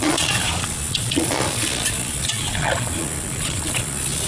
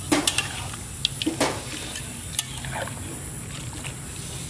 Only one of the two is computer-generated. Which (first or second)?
first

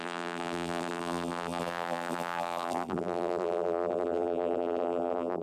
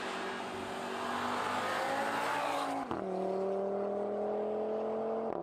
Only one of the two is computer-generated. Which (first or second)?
first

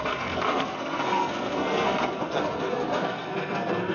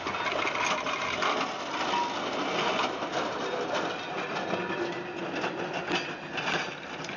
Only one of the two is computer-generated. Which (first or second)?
first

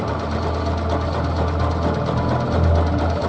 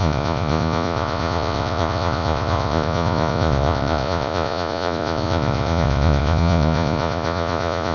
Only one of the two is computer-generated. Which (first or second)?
second